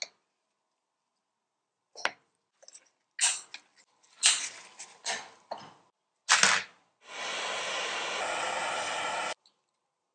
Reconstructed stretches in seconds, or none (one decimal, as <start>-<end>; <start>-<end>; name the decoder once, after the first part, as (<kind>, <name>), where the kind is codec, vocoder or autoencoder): none